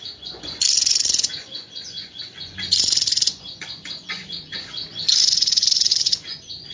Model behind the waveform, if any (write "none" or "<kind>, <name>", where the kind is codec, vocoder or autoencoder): vocoder, Vocos